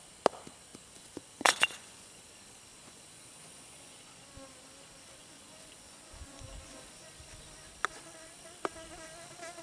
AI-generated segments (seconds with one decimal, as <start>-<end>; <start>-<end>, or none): 0.7-2.3; 2.8-4.2; 5.2-7.1